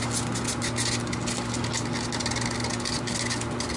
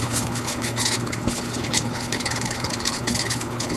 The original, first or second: first